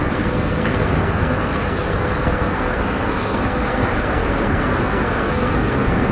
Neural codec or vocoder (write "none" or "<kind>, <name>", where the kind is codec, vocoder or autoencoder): codec, SNAC